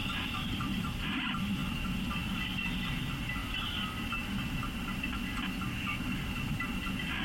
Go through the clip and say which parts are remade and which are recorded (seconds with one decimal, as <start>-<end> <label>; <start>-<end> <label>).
0.0-7.2 recorded